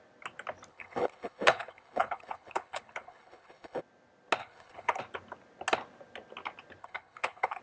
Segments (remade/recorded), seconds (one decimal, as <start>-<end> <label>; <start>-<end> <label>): 0.0-0.7 recorded; 0.7-3.8 remade; 3.8-4.4 recorded; 4.4-5.0 remade; 5.0-6.8 recorded; 6.8-7.6 remade